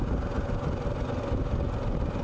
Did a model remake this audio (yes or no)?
no